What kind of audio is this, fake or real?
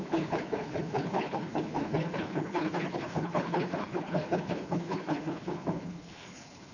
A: fake